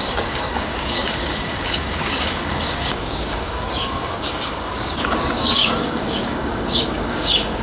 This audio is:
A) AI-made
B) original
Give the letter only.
A